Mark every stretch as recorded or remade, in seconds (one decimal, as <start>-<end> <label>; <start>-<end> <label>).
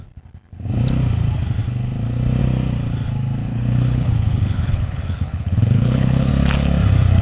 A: 0.0-3.4 recorded; 3.4-6.3 remade; 6.3-7.2 recorded